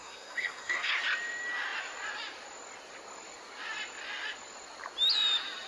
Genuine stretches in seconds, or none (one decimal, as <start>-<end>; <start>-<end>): 0.9-5.7